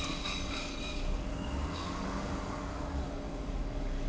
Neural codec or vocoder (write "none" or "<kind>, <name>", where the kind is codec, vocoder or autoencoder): codec, DAC